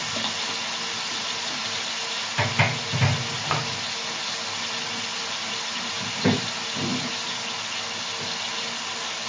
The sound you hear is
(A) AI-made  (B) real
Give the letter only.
B